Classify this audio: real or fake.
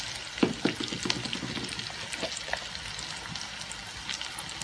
real